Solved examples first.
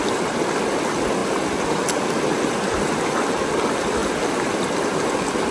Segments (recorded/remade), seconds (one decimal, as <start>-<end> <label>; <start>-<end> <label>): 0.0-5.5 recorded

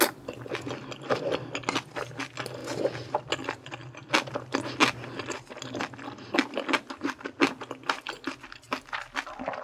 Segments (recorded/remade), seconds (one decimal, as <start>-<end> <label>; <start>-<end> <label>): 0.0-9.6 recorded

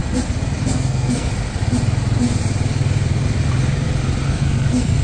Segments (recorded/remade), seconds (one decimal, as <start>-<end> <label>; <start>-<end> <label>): 0.0-0.7 recorded; 0.7-1.3 remade; 1.3-4.3 recorded; 4.3-5.0 remade